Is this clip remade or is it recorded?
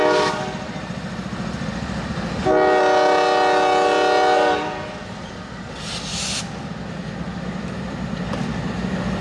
recorded